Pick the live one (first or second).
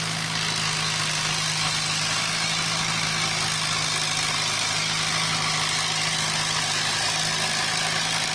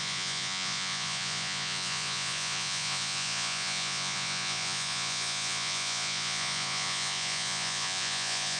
first